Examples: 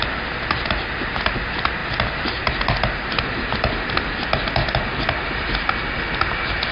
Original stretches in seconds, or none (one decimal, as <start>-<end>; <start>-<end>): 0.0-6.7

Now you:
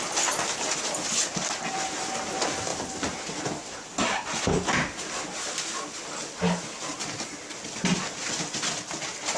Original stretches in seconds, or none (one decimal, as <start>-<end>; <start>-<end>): 0.0-9.4

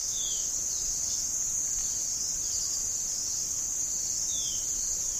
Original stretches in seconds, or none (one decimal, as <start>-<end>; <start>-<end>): 0.5-5.2

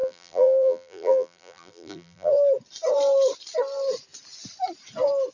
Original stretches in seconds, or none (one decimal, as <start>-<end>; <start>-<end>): 2.3-5.3

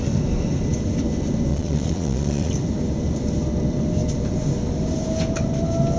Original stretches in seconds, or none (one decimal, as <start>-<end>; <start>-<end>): 0.0-1.5; 2.5-6.0

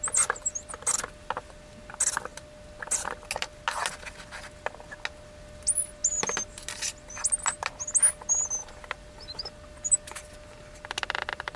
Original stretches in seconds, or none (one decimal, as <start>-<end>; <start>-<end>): 0.0-11.6

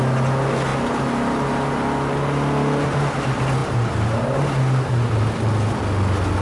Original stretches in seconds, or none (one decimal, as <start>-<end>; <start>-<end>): 0.0-3.6; 4.5-6.4

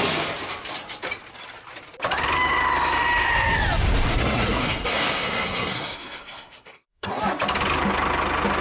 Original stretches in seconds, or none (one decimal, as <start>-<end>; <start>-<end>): 0.0-4.1; 7.2-8.6